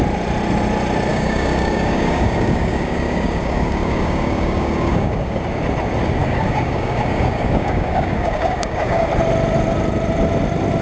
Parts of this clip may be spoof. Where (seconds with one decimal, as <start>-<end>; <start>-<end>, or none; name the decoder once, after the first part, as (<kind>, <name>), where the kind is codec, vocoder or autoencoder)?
1.1-5.4 (codec, DAC); 6.2-9.1